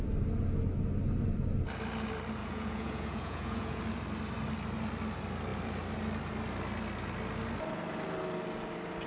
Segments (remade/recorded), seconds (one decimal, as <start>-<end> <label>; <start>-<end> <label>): 0.0-2.4 recorded; 2.4-3.8 remade; 3.8-9.1 recorded